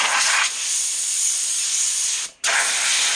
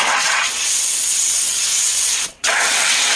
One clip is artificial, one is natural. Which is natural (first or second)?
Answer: first